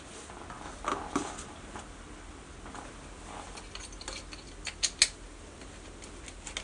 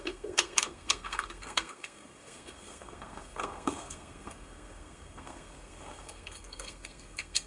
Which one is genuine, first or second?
first